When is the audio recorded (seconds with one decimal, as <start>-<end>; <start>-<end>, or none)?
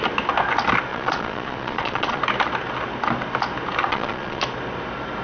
0.0-0.9; 2.2-3.9; 4.4-5.2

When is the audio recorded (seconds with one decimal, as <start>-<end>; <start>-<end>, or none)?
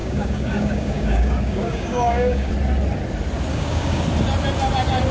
2.5-3.5; 4.0-5.1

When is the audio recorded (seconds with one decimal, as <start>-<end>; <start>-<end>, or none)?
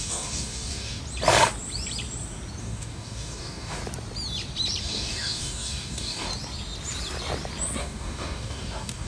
1.0-2.6; 3.8-4.8; 6.3-7.8